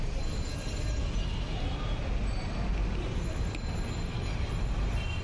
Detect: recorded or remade recorded